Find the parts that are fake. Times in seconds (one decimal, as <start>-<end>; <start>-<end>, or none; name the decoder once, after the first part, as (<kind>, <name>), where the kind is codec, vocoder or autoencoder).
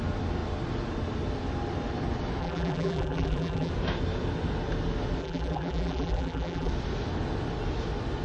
2.4-3.7 (vocoder, BigVGAN v2); 5.2-6.7